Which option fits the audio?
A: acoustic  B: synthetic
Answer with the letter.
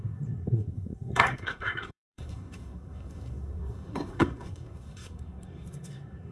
B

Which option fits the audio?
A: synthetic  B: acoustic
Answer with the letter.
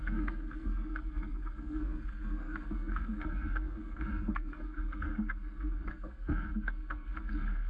A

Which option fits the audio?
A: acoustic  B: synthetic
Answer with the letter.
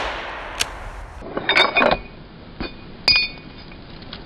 A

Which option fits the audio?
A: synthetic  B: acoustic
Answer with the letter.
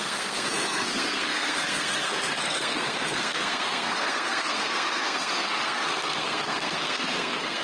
A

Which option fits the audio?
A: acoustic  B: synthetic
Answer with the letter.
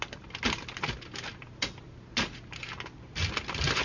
A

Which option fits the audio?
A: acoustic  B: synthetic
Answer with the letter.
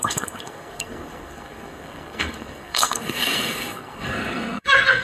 B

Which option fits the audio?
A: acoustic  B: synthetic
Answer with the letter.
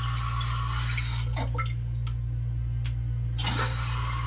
A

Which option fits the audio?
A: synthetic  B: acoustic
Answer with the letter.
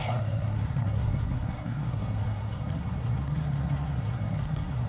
A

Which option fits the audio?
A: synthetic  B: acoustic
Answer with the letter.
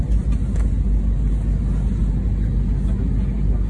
B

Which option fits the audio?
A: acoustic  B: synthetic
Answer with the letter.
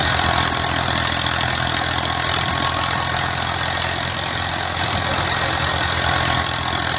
A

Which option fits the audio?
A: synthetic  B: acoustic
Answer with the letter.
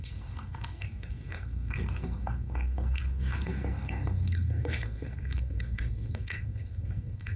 A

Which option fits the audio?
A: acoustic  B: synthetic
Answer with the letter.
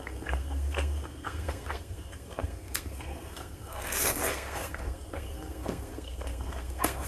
B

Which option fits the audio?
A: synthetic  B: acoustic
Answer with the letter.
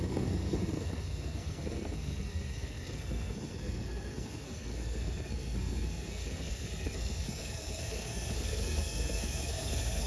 A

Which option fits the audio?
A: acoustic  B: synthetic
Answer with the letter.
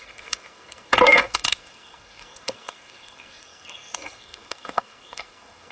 B